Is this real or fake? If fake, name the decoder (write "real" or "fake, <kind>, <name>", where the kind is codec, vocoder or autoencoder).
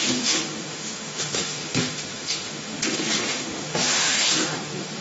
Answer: fake, autoencoder, DAC-VAE